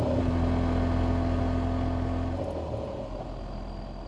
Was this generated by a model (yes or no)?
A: no